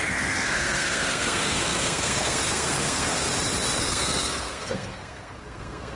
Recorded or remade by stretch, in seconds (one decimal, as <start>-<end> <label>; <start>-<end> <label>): 0.0-3.3 remade; 3.3-3.8 recorded; 3.8-6.0 remade